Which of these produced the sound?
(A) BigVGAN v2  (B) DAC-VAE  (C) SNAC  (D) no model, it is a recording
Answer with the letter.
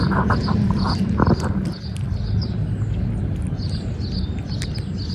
D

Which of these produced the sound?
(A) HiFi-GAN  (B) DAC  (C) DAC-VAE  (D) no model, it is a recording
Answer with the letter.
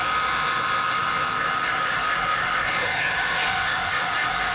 C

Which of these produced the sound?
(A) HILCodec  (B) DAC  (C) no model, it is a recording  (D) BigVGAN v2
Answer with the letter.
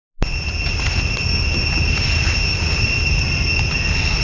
C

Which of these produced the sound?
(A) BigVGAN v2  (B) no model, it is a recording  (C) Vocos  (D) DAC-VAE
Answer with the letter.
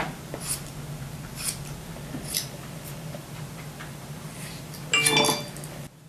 B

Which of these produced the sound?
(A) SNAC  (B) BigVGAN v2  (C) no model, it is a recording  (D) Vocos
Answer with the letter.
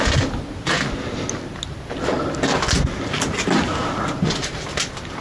C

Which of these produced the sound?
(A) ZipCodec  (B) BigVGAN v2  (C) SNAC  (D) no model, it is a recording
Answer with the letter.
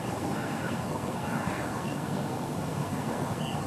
C